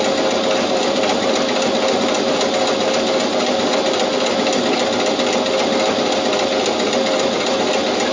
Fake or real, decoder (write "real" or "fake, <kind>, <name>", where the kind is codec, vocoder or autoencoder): real